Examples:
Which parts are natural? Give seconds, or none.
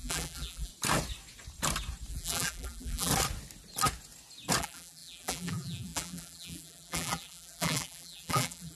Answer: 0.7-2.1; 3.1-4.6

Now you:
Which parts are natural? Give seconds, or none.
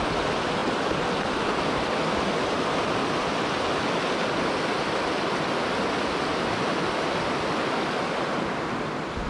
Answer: 0.0-9.3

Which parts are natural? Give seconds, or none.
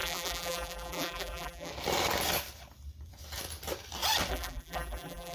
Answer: 1.7-4.3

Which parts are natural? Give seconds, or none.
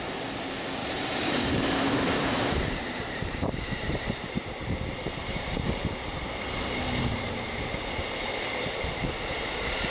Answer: 0.0-0.8; 5.8-7.1; 7.9-9.9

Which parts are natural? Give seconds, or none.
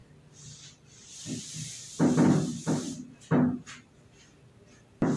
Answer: 0.0-5.2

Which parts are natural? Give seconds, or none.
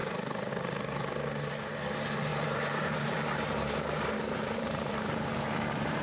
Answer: 0.0-2.3